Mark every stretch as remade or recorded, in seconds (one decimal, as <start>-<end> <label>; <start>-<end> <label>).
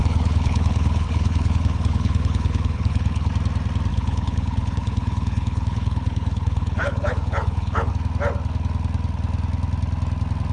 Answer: 0.0-3.3 remade; 3.3-3.9 recorded; 3.9-7.9 remade; 7.9-10.5 recorded